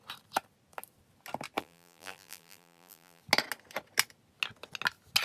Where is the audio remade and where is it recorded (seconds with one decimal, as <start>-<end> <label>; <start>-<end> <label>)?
0.0-1.6 recorded; 1.6-3.2 remade; 3.2-5.2 recorded